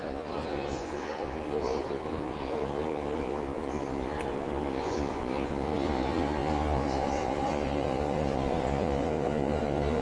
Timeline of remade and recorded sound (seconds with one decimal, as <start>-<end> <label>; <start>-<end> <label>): 0.0-10.0 remade